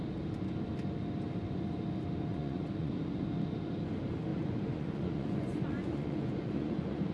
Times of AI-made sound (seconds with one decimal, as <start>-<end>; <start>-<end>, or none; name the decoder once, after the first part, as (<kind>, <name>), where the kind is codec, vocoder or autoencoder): 2.3-2.9 (vocoder, Vocos); 4.3-7.1